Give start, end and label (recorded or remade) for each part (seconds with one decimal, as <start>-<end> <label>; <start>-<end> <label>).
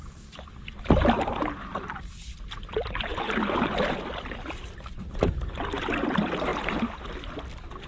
0.0-3.1 recorded; 3.1-3.8 remade; 3.8-7.9 recorded